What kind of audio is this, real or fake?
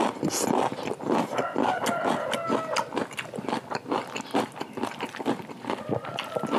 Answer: real